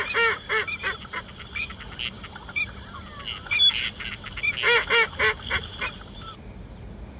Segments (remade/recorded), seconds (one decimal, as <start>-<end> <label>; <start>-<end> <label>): 0.0-7.2 recorded